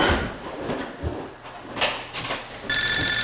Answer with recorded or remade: recorded